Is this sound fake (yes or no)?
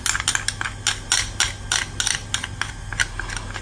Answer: no